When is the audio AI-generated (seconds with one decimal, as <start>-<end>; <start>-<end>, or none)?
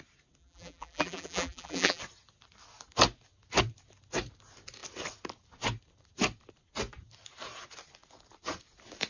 0.4-2.0